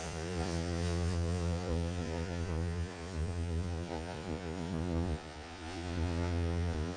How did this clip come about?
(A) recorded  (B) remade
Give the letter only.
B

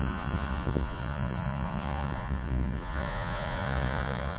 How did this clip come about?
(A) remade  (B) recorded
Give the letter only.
A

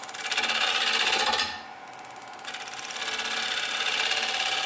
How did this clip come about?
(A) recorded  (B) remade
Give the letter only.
A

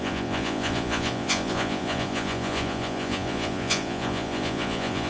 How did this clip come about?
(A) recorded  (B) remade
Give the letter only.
B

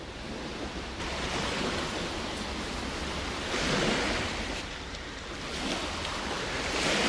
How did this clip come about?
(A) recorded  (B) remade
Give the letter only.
A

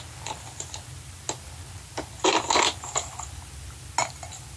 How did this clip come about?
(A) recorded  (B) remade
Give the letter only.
A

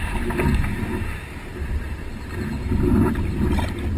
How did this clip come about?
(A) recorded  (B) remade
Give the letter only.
A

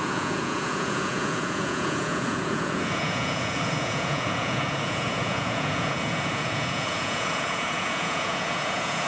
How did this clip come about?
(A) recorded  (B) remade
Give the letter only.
B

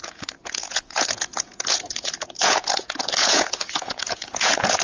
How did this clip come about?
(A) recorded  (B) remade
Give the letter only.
B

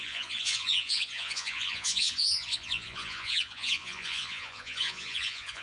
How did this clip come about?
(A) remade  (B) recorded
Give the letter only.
A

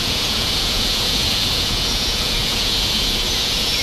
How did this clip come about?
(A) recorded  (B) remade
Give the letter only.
B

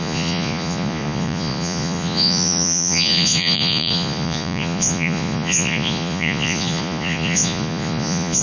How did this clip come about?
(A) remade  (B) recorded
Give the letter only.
A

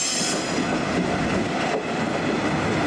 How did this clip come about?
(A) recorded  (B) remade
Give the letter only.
A